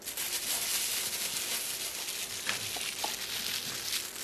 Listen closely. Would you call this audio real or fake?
real